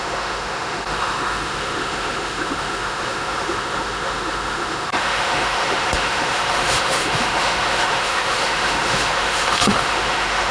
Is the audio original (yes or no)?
no